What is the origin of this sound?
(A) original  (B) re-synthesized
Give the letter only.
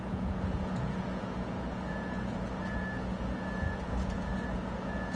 B